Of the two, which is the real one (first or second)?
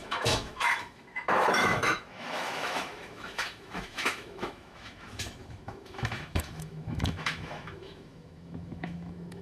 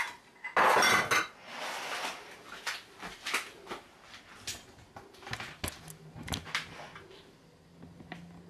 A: second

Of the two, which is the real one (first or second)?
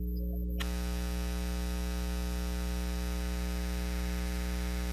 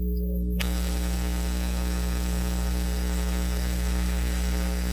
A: first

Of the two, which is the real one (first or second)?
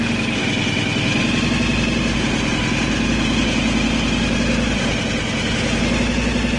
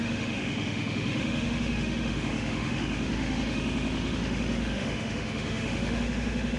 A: first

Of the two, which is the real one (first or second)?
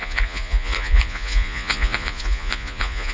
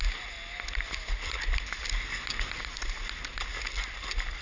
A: second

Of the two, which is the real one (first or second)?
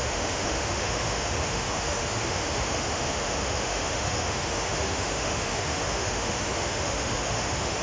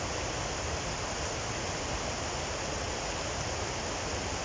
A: second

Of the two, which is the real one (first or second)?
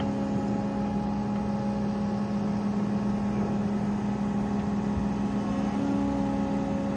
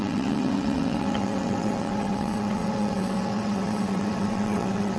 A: first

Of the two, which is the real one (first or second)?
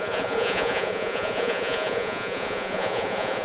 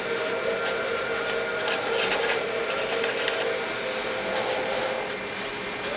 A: second